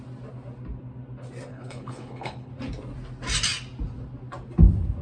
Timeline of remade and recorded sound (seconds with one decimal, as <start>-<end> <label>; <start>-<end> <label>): 0.0-1.5 recorded; 1.5-2.5 remade; 2.5-5.0 recorded